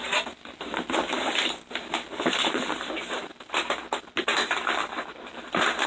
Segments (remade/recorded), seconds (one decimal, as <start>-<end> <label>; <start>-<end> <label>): 0.0-2.4 recorded; 2.4-3.3 remade; 3.3-4.3 recorded; 4.3-5.9 remade